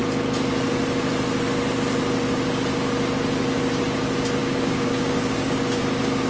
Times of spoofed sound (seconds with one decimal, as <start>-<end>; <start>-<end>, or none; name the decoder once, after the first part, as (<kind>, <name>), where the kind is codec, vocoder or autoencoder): 4.4-5.8 (codec, DAC)